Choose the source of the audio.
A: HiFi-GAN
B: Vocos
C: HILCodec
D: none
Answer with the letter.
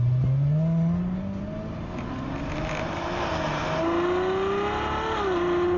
D